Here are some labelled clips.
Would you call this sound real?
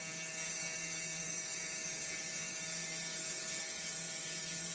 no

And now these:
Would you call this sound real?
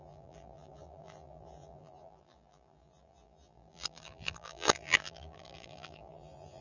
no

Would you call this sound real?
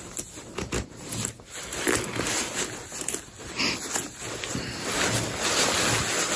yes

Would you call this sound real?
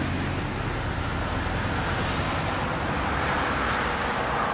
yes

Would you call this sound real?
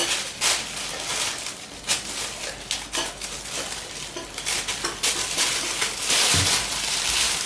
yes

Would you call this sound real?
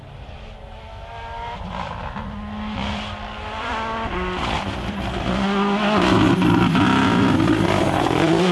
yes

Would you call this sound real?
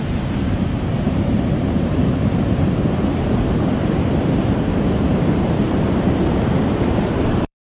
no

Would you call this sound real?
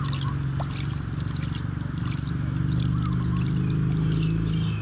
yes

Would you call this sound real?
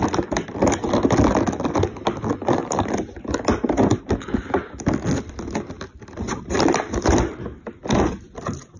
yes